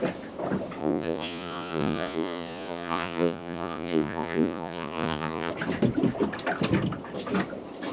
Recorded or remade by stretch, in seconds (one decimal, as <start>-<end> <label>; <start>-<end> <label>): 0.0-0.8 recorded; 0.8-5.5 remade; 5.5-7.9 recorded